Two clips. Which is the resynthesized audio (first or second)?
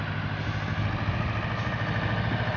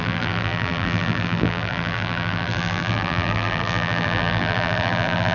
second